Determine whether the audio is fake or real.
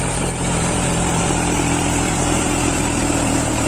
fake